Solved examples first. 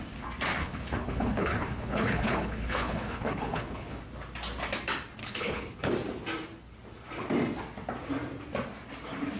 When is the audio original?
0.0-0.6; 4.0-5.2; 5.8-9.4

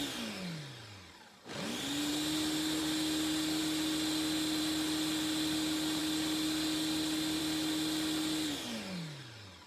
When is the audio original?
0.0-9.7

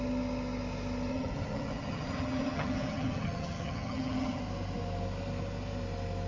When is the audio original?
0.0-1.1; 4.4-6.3

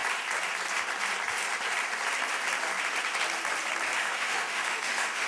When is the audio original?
0.0-4.0

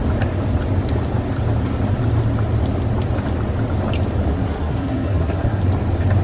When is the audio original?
0.0-4.3; 5.6-6.2

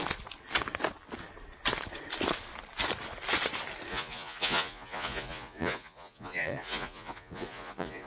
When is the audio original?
0.0-3.9

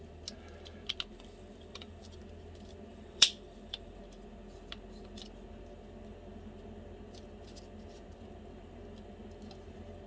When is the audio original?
0.0-1.1; 2.2-2.9; 4.0-10.1